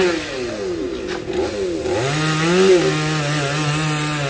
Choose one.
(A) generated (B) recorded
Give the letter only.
B